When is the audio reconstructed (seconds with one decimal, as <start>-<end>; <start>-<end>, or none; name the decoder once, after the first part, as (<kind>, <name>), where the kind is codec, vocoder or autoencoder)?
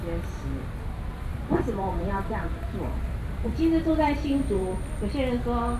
1.3-4.8 (vocoder, BigVGAN v2)